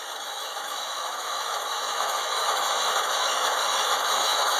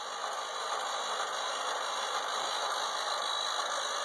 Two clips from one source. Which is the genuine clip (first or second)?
second